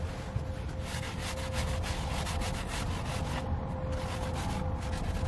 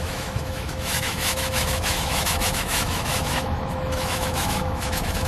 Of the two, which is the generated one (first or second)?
second